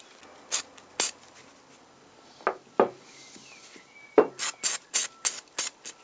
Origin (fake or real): real